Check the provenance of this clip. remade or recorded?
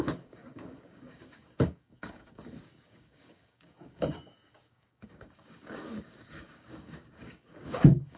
remade